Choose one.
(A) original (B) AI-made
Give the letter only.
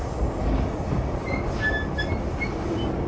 A